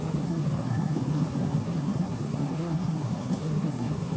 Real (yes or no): no